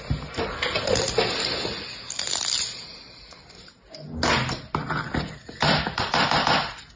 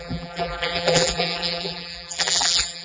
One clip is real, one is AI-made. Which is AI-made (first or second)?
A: second